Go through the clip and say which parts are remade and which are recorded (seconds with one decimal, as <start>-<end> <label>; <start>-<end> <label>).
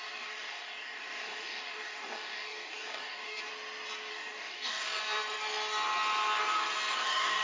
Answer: 0.0-3.5 remade; 3.5-4.1 recorded; 4.1-5.0 remade; 5.0-6.9 recorded; 6.9-7.4 remade